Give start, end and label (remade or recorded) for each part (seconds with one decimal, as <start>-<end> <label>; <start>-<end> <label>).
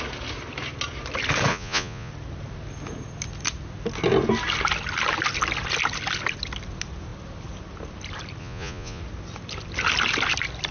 0.0-1.5 recorded; 1.5-2.1 remade; 2.1-8.4 recorded; 8.4-9.0 remade; 9.0-10.7 recorded